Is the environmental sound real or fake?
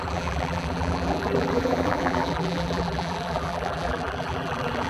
fake